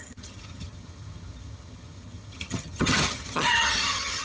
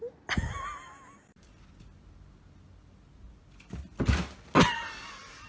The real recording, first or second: second